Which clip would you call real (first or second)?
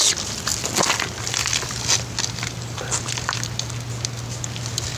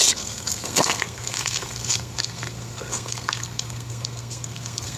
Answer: first